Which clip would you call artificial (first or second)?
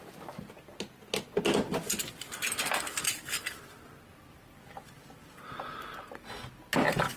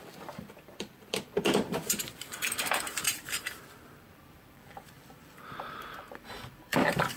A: second